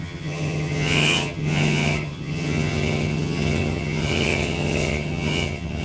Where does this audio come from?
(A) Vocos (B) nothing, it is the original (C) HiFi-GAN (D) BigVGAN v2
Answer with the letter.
C